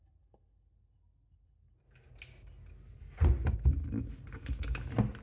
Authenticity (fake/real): real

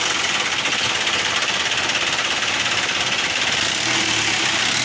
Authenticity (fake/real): real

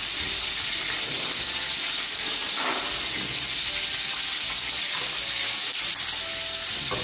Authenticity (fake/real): real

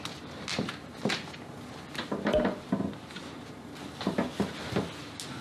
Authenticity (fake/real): real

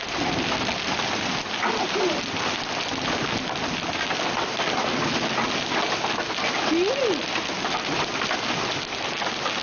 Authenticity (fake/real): real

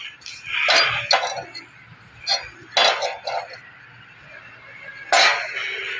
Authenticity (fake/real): real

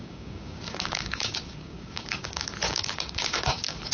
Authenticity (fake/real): fake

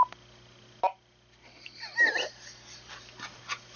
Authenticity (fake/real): real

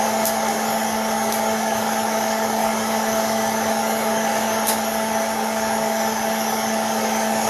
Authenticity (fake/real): fake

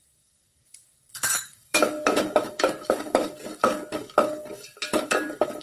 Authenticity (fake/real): fake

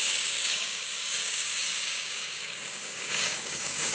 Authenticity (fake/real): fake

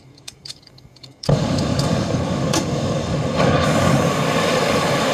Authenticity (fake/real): fake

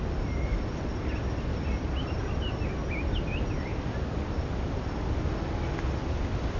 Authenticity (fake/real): real